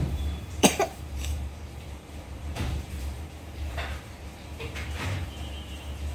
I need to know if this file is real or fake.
fake